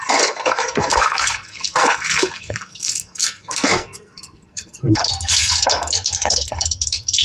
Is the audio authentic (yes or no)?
no